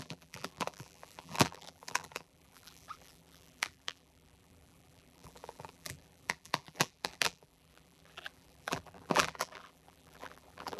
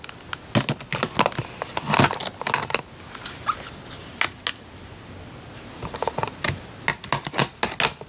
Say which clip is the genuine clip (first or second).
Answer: second